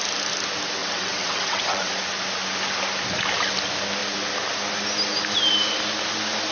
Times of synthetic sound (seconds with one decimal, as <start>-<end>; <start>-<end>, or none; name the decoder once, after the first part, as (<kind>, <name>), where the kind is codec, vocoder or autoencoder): 0.8-1.9 (vocoder, WaveNeXt)